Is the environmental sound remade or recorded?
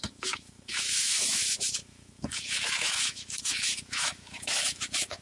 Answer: remade